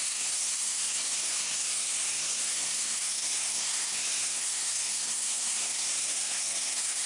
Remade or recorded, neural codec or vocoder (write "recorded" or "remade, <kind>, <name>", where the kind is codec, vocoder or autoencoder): remade, codec, SNAC